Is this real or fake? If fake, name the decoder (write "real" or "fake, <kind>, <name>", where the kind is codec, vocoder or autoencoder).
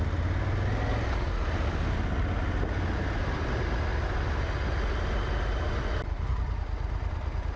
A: real